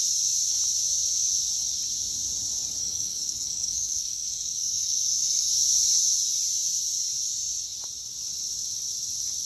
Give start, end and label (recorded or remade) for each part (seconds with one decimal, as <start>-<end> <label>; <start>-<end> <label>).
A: 0.0-2.8 recorded; 2.8-5.5 remade; 5.5-9.5 recorded